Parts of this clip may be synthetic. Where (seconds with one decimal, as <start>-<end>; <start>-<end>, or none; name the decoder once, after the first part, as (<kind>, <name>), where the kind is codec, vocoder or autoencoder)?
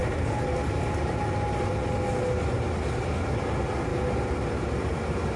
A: none